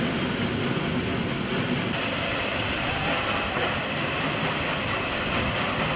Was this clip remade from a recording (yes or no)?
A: no